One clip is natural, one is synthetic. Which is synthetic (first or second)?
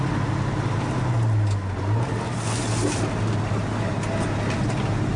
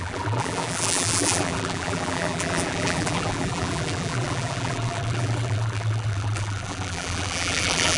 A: second